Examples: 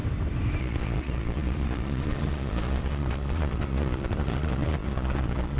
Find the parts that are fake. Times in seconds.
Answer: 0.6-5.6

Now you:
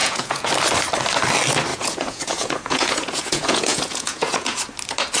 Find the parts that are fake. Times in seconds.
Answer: 0.0-0.5; 1.7-4.6

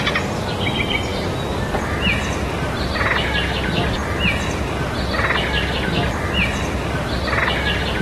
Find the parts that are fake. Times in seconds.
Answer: none

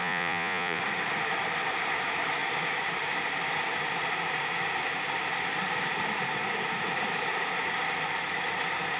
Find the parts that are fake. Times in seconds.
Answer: 0.0-0.8

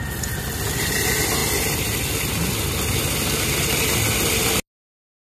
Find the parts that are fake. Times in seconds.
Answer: none

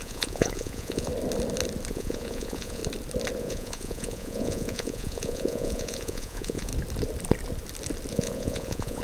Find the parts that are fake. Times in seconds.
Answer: 0.0-1.1; 1.9-2.8; 3.4-6.7; 8.1-9.0

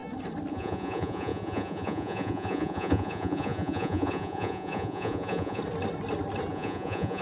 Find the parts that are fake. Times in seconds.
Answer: 0.5-5.6; 6.5-7.2

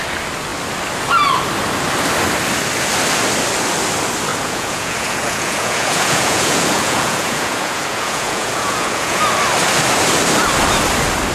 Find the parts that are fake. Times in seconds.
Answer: 4.3-9.2